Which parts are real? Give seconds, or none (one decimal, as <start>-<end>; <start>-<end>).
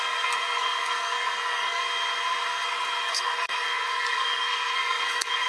1.8-3.1